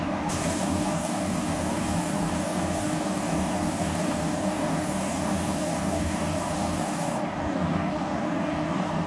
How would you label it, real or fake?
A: fake